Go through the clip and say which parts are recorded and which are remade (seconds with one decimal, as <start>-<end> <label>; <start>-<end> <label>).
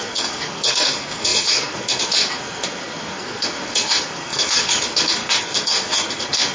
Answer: 0.0-6.5 remade